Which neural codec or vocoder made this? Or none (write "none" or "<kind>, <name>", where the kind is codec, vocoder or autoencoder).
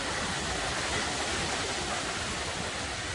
none